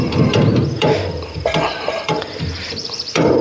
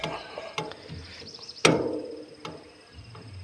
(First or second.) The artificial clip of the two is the first